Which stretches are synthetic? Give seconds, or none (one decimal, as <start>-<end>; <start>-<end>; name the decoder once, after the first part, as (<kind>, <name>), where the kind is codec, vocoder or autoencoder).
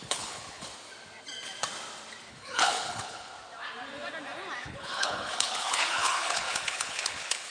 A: 0.0-0.7 (codec, HILCodec); 2.3-3.3; 4.6-7.5